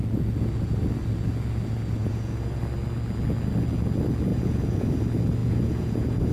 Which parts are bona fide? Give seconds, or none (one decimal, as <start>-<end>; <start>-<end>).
0.0-2.0; 2.6-4.3; 5.0-5.4